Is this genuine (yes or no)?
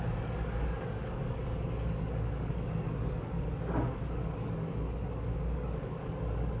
no